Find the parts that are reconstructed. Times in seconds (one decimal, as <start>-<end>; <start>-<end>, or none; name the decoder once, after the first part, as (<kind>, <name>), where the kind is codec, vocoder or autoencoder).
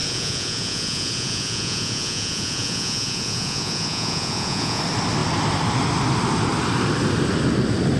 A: 0.0-4.8 (vocoder, Vocos)